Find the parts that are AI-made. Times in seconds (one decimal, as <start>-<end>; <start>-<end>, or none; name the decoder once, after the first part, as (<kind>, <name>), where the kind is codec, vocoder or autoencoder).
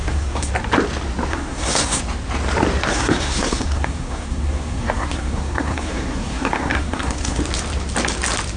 0.0-0.5 (codec, SNAC); 1.3-2.0; 2.9-7.4